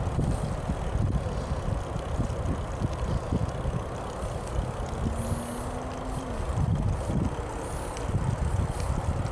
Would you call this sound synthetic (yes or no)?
no